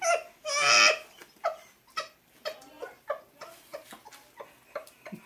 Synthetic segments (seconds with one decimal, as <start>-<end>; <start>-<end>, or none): none